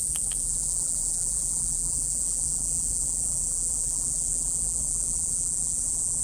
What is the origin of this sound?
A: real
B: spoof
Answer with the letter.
B